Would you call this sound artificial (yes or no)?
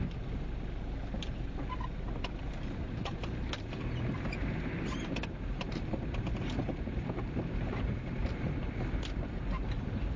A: yes